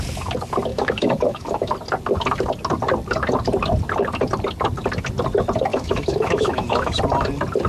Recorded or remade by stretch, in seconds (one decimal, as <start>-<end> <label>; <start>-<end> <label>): 0.0-0.7 recorded; 0.7-1.7 remade; 1.7-5.7 recorded; 5.7-7.0 remade; 7.0-7.7 recorded